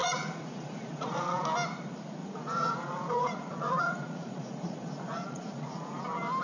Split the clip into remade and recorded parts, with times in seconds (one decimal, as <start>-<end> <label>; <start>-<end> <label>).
0.0-1.4 remade; 1.4-2.2 recorded; 2.2-6.0 remade; 6.0-6.4 recorded